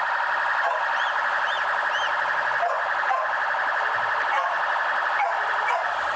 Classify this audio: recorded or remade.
recorded